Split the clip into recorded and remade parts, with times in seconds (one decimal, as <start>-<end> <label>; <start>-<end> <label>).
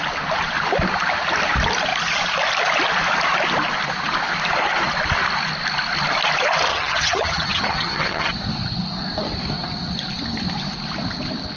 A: 0.0-6.7 recorded; 6.7-8.3 remade; 8.3-11.6 recorded